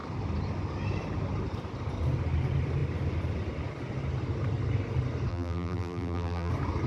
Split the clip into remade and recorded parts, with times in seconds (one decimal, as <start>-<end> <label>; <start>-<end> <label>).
0.0-5.3 recorded; 5.3-6.5 remade; 6.5-6.9 recorded